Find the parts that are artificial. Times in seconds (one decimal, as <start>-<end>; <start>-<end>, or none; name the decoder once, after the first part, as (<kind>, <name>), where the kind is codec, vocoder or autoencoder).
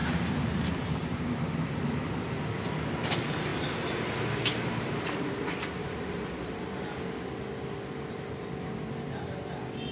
0.0-0.7 (vocoder, BigVGAN v2); 3.5-5.3; 5.8-6.5